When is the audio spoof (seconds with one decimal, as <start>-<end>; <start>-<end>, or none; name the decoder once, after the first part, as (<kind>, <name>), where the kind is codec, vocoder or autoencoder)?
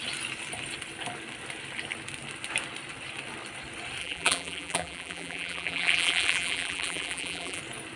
4.0-7.6 (vocoder, BigVGAN v2)